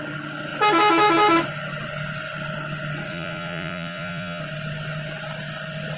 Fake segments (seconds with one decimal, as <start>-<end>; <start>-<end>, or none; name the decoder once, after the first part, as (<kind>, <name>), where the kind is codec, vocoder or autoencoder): 3.1-4.4 (vocoder, Vocos)